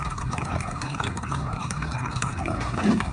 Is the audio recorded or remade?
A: remade